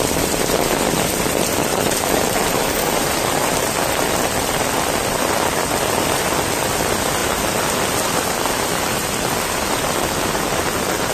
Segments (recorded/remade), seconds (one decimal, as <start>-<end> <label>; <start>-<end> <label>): 0.0-11.1 recorded

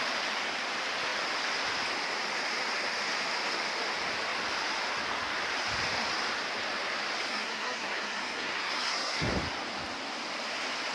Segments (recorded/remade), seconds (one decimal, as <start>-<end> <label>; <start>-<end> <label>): 0.0-7.3 recorded; 7.3-9.3 remade; 9.3-10.9 recorded